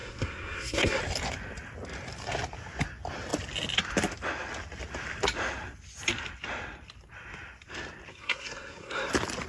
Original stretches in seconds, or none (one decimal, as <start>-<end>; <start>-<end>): 1.0-8.1; 9.1-9.5